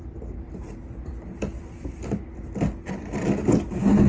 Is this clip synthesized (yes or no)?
yes